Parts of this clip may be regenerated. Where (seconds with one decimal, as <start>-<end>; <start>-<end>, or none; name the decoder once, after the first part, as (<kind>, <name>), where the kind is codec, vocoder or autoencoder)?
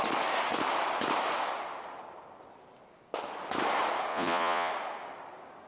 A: 4.1-4.7 (vocoder, Vocos)